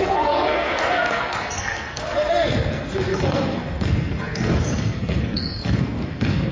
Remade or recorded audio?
remade